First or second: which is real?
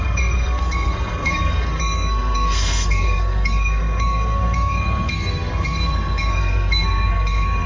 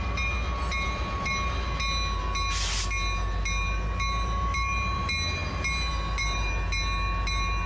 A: second